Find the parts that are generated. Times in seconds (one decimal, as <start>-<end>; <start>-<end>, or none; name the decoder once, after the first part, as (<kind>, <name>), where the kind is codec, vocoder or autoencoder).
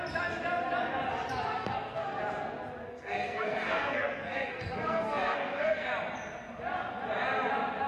1.6-2.2 (codec, SNAC); 2.9-5.9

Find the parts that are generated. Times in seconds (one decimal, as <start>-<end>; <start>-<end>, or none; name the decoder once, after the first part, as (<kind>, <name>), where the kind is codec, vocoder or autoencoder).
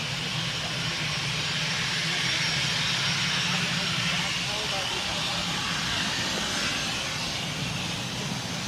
none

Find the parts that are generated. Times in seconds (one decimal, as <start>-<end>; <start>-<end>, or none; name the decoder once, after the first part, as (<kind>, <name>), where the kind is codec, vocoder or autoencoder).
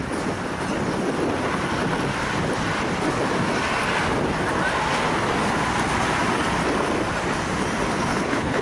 8.1-8.6 (codec, HILCodec)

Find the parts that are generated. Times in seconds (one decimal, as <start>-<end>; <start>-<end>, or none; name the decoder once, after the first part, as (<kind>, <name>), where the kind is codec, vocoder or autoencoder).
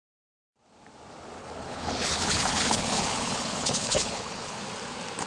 1.4-4.6 (codec, HILCodec)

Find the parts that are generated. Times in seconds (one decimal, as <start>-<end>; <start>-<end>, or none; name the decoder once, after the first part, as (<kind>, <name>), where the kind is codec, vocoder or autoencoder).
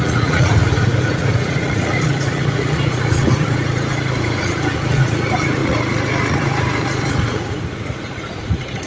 0.0-8.9 (vocoder, Vocos)